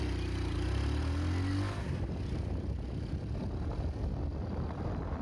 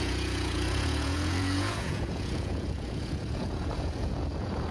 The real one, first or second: first